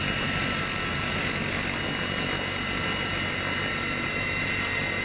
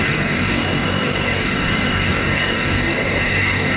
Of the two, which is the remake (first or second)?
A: second